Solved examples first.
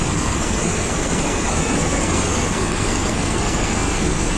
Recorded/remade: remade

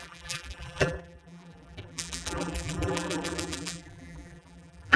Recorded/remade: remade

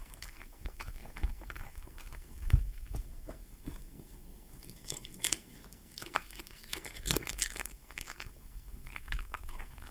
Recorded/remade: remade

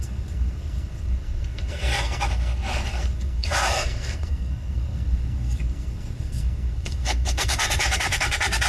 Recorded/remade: remade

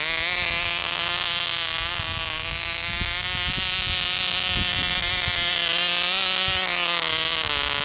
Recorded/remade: recorded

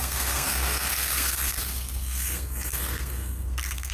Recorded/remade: remade